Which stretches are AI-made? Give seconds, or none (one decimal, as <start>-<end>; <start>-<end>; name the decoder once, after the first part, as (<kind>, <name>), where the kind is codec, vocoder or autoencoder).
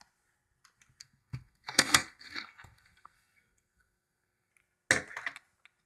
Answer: 1.0-4.5 (codec, SNAC)